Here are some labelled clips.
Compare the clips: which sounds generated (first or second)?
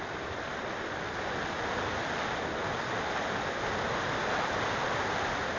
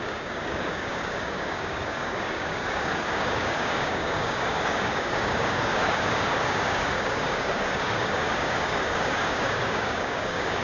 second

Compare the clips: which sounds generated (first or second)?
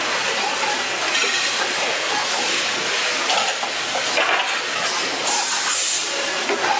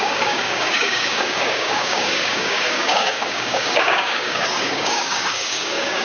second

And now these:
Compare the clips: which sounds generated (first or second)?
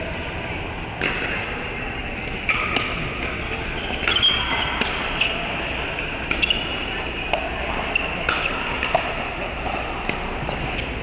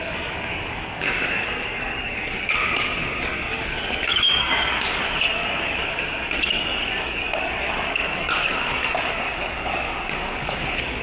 second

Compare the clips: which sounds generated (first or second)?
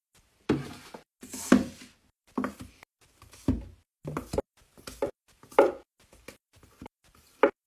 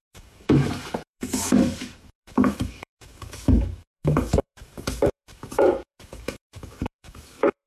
second